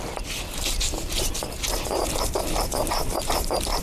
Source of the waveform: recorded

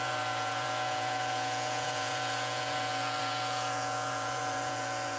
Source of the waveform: remade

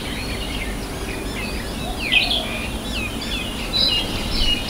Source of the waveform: recorded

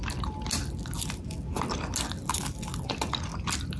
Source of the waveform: recorded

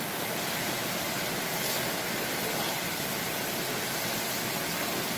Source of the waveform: recorded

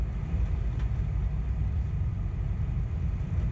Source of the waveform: recorded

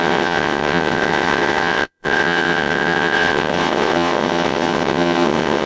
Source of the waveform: remade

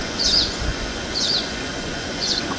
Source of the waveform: remade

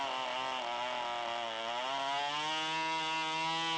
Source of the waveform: recorded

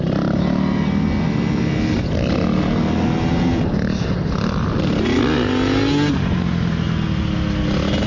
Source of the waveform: recorded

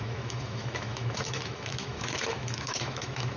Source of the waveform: remade